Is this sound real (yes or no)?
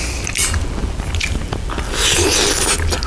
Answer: yes